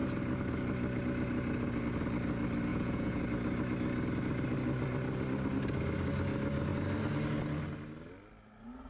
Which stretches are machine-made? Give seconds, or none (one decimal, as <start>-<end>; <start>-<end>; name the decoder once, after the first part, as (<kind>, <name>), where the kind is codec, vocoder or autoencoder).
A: 2.7-3.2 (vocoder, Vocos)